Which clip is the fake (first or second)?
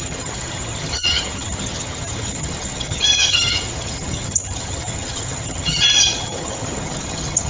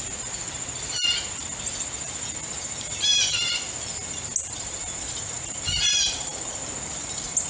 first